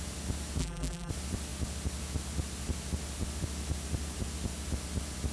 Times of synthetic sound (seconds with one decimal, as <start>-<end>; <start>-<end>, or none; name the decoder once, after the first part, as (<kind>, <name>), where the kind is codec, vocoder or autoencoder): 0.6-1.1 (vocoder, BigVGAN v2)